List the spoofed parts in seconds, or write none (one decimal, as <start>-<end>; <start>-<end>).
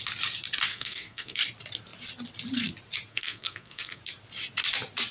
0.7-1.4; 3.1-4.0